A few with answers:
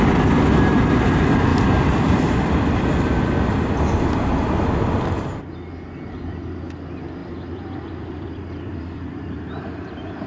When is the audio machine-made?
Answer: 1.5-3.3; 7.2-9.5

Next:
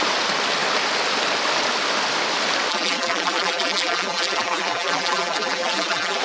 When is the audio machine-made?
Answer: 2.7-6.2